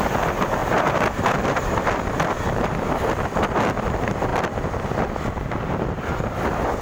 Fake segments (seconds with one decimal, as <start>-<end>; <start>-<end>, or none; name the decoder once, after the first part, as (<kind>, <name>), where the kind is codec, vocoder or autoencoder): none